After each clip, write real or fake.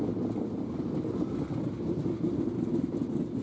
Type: real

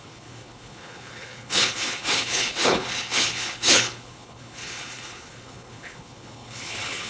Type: fake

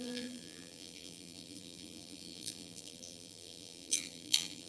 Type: fake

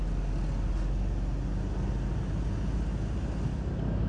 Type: real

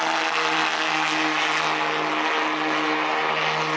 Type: real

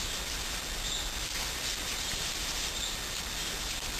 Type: real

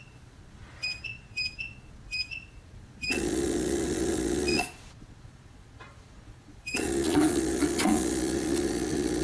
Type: fake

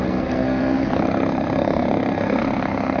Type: fake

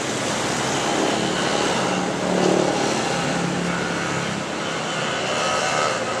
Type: real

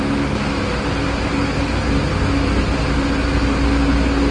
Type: real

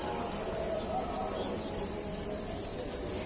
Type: real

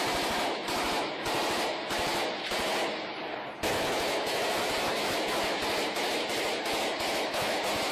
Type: real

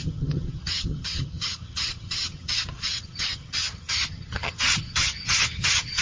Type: fake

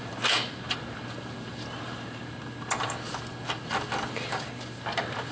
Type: real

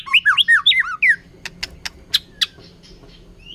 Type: real